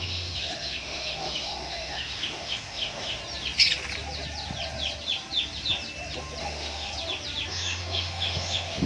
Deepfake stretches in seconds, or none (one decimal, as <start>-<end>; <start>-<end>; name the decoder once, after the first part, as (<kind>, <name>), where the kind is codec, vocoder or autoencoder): 0.0-3.2 (autoencoder, DAC-VAE); 6.4-6.9; 7.5-8.9